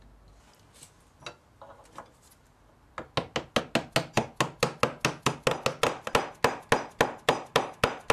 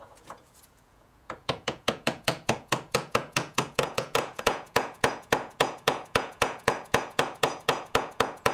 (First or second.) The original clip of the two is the first